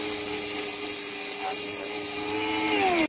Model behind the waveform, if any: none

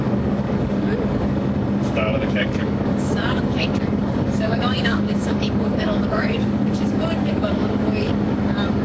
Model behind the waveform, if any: codec, DAC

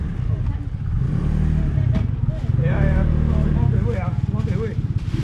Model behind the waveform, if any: none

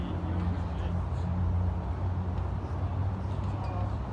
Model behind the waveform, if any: none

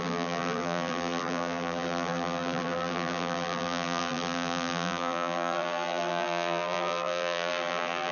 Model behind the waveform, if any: vocoder, BigVGAN v2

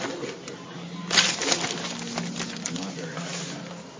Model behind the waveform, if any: none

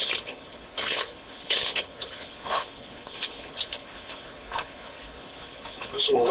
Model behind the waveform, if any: codec, HILCodec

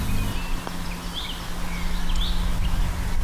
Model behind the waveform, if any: none